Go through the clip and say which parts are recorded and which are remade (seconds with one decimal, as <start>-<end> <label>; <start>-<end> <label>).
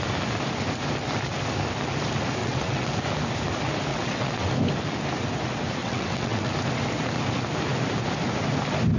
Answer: 0.0-2.4 recorded; 2.4-3.0 remade; 3.0-3.9 recorded; 3.9-4.5 remade; 4.5-5.8 recorded; 5.8-6.5 remade; 6.5-9.0 recorded